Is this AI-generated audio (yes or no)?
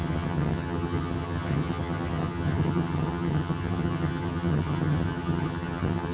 yes